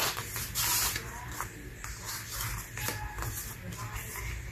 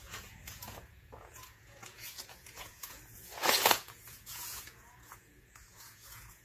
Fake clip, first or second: second